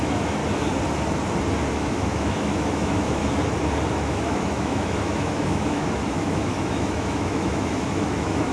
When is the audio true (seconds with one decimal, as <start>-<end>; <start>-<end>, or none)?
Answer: 0.4-1.7; 3.2-3.9